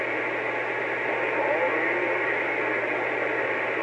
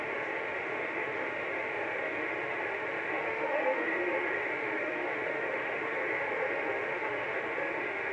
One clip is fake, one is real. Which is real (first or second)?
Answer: first